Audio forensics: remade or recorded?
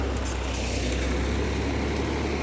recorded